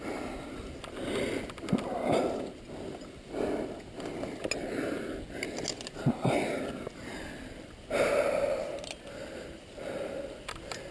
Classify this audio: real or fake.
real